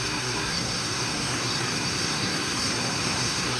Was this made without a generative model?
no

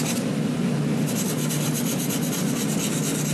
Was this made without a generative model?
yes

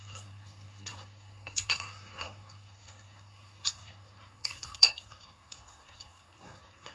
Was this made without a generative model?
no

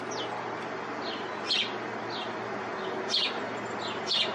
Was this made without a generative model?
yes